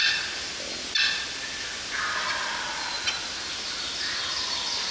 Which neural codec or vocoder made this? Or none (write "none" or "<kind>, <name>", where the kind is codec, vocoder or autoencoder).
none